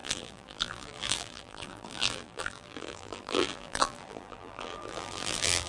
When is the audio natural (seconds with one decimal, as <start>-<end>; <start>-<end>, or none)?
none